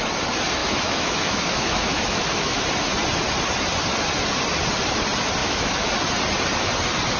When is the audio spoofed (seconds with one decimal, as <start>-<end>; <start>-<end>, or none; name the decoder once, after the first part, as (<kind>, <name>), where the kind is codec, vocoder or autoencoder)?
0.6-2.6 (autoencoder, DAC-VAE); 5.4-5.9